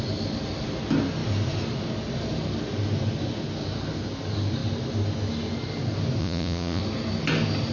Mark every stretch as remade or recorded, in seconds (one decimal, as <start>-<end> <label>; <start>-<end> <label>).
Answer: 0.0-6.2 recorded; 6.2-6.8 remade; 6.8-7.7 recorded